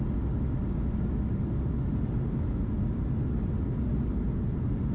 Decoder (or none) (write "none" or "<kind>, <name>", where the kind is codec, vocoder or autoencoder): none